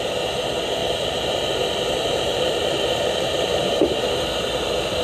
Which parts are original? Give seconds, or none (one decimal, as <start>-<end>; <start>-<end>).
0.0-0.8; 3.8-5.0